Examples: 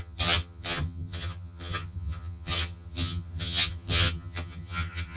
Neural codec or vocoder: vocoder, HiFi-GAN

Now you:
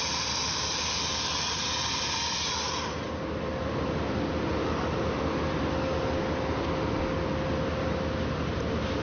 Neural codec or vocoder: none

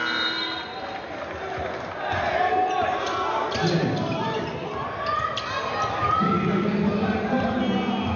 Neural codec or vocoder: none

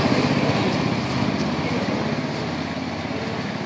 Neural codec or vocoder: none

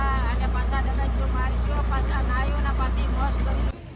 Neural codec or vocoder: none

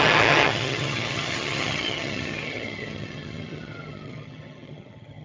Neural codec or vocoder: vocoder, HiFi-GAN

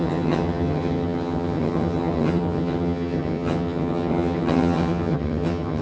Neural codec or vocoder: vocoder, HiFi-GAN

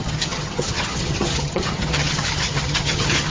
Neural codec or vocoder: vocoder, HiFi-GAN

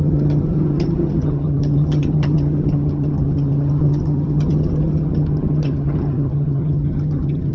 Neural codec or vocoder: vocoder, HiFi-GAN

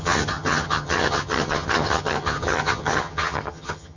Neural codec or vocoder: vocoder, HiFi-GAN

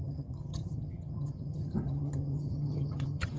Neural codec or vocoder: vocoder, HiFi-GAN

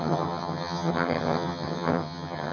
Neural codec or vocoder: vocoder, HiFi-GAN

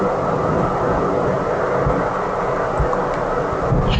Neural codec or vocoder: none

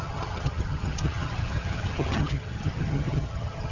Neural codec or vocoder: vocoder, HiFi-GAN